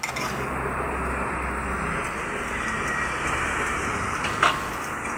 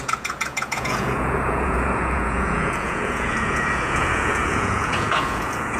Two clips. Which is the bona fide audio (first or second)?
first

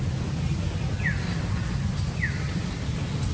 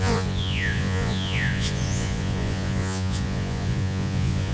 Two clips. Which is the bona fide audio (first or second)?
first